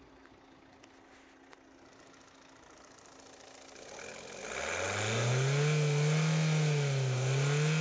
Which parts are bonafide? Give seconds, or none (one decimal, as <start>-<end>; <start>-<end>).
0.0-7.8